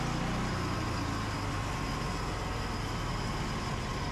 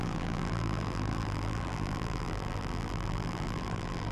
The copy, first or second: second